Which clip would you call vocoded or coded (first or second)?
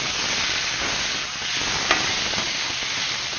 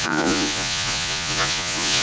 second